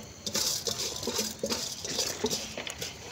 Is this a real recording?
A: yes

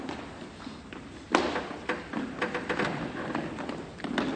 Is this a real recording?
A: yes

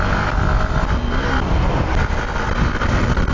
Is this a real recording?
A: yes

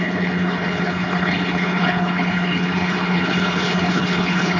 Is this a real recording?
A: no